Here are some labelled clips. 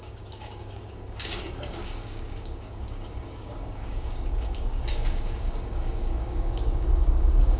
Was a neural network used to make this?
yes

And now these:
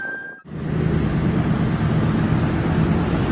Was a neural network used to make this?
no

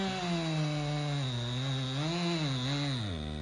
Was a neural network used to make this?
no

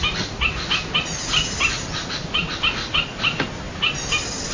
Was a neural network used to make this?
no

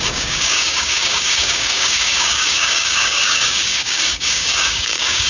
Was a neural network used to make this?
yes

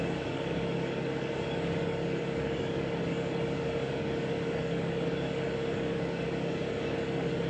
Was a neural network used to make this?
yes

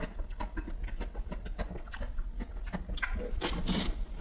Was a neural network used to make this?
no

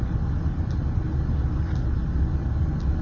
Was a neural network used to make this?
no